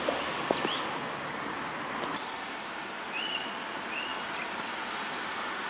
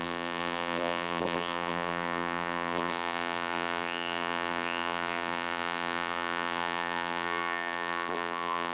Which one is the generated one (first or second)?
second